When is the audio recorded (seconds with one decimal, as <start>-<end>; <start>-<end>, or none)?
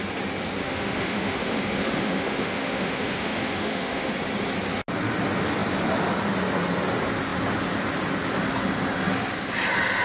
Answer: 0.0-0.6; 4.1-10.0